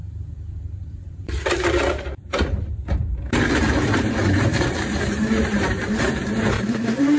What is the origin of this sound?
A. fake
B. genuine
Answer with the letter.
A